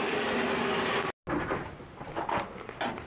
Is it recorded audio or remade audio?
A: recorded